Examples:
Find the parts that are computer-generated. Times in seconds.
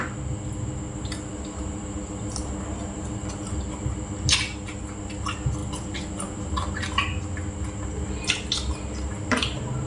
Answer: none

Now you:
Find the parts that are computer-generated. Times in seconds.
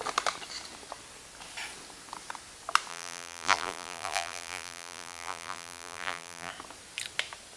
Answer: 2.9-6.5 (vocoder, BigVGAN v2)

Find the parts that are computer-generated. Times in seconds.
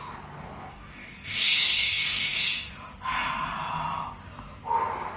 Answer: 0.7-2.7 (codec, DAC)